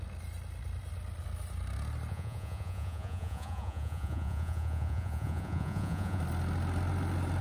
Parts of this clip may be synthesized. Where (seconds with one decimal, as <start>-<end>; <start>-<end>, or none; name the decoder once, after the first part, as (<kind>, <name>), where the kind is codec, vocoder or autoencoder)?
2.1-6.2 (vocoder, Vocos)

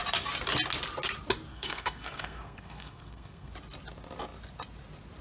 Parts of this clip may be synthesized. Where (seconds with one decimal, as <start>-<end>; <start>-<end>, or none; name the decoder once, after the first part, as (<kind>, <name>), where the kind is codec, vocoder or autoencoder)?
1.5-3.5 (codec, SNAC)